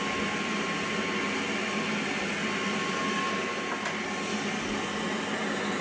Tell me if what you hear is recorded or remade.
recorded